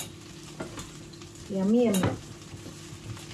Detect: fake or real real